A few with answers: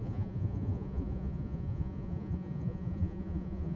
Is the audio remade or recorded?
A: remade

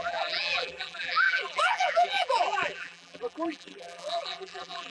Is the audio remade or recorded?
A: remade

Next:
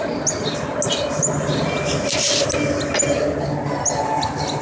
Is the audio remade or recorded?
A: recorded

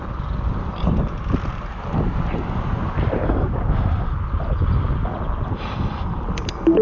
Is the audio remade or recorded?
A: recorded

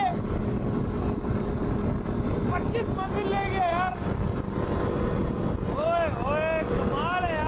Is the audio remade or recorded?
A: recorded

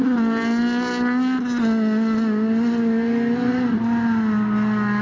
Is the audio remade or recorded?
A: recorded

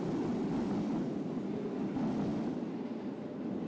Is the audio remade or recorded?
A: recorded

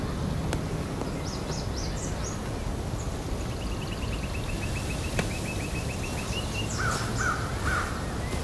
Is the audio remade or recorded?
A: recorded